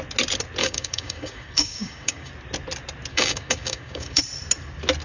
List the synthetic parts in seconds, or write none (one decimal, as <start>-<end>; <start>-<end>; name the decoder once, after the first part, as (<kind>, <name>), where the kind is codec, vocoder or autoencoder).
0.6-2.3 (codec, DAC); 3.1-4.2